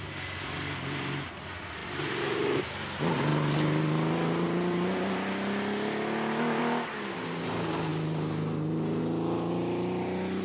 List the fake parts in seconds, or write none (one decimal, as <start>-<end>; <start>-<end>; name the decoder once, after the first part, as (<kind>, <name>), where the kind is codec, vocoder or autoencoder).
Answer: 1.8-2.6 (vocoder, BigVGAN v2)